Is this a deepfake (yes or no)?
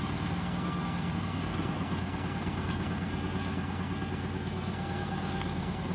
yes